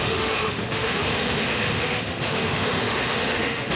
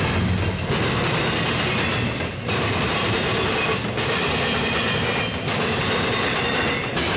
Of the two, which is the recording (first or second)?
second